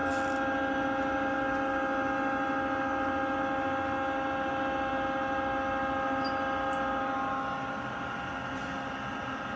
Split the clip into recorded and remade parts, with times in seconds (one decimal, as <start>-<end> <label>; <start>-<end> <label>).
0.0-9.6 recorded